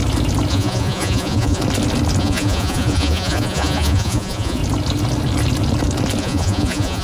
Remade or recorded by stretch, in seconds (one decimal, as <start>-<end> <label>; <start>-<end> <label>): 0.0-0.5 recorded; 0.5-1.6 remade; 1.6-2.2 recorded; 2.2-4.6 remade; 4.6-6.2 recorded; 6.2-7.0 remade